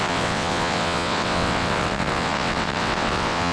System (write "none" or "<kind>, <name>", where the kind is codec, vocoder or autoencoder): vocoder, WaveNeXt